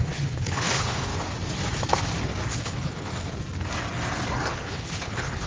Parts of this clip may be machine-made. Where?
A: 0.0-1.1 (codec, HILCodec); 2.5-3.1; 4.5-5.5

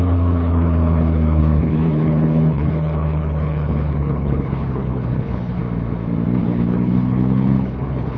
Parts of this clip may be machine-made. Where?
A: 0.0-5.6 (codec, HILCodec); 6.4-8.2

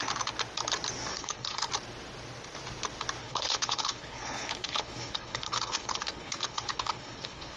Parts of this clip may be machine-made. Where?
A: 1.1-1.7 (codec, HILCodec); 3.2-7.6

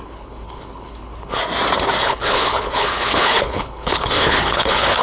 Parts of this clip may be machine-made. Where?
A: 0.0-1.4 (codec, HILCodec); 2.0-5.0